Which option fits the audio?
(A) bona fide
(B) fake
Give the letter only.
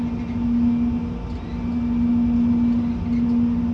A